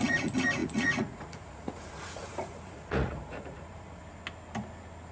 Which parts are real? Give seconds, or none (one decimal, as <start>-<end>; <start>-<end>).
4.0-5.1